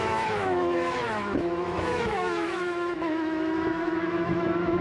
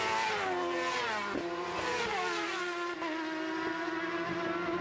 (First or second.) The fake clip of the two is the first